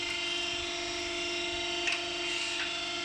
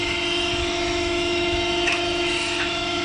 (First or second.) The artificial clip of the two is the second